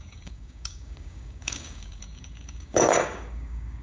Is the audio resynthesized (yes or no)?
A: yes